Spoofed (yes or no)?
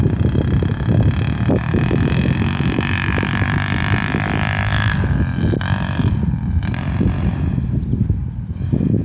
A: no